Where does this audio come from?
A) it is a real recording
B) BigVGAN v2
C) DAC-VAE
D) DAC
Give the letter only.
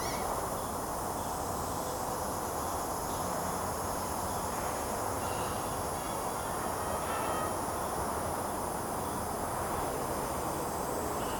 A